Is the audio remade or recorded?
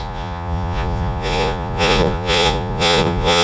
remade